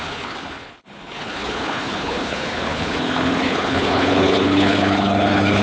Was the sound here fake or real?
fake